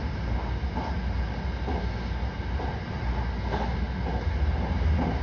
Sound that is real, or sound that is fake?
real